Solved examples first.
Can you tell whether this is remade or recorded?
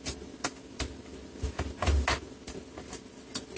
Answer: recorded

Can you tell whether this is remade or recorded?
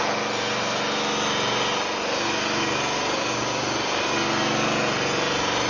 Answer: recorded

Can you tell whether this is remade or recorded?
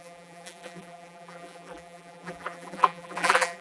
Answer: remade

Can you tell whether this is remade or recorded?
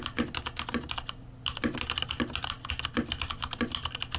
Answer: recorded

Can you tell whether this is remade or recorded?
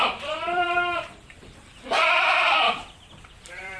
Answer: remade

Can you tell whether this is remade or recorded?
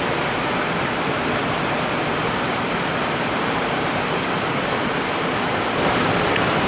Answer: recorded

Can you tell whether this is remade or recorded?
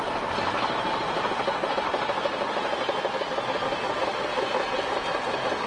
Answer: recorded